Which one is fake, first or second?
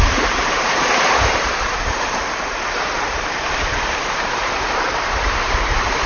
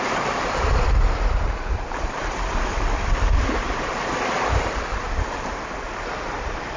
first